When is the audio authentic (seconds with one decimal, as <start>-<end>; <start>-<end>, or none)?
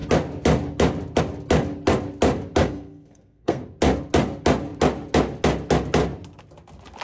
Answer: 0.0-2.6; 3.6-7.0